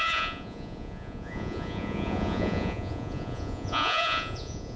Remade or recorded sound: remade